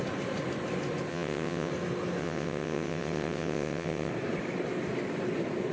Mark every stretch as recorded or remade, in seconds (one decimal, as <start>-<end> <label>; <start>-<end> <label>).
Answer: 0.0-1.1 recorded; 1.1-1.7 remade; 1.7-2.2 recorded; 2.2-4.1 remade; 4.1-5.7 recorded